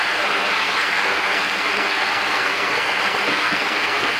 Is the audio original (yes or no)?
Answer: no